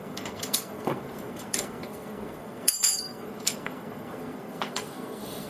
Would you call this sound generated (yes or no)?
yes